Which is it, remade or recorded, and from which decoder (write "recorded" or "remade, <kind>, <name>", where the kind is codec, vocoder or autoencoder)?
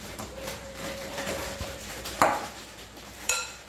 remade, vocoder, BigVGAN v2